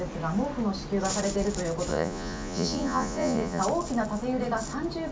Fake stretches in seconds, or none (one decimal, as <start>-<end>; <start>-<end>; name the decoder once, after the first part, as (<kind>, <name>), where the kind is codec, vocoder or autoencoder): 1.9-3.6 (vocoder, Vocos)